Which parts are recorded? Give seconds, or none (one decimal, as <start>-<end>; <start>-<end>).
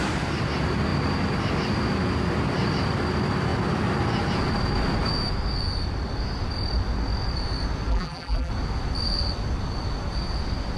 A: 0.0-7.9; 8.5-10.8